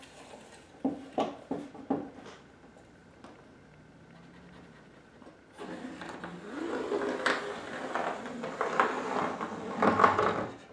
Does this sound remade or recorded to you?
recorded